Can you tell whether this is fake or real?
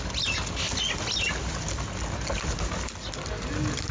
real